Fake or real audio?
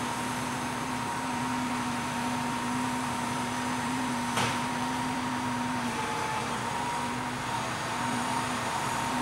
fake